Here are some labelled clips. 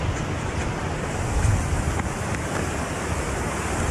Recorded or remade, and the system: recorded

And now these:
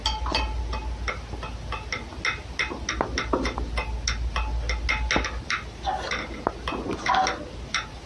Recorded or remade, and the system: recorded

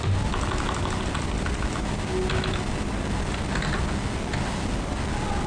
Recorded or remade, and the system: recorded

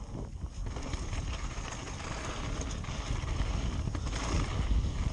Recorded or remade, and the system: recorded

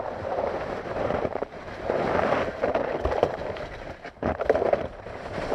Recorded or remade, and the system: remade, vocoder, BigVGAN v2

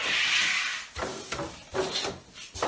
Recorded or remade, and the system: recorded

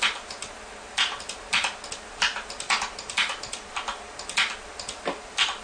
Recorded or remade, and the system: recorded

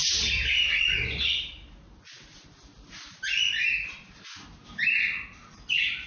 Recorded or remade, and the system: recorded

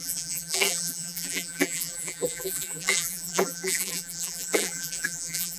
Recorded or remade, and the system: remade, vocoder, BigVGAN v2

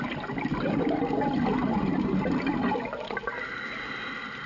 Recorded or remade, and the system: recorded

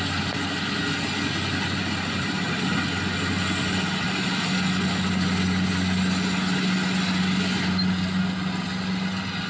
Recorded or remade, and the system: recorded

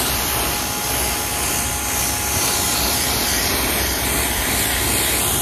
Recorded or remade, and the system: recorded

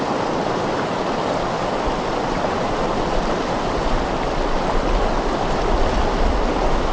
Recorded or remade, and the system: recorded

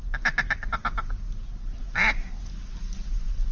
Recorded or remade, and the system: recorded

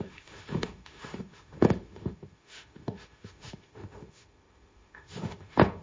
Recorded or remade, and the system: remade, autoencoder, DAC-VAE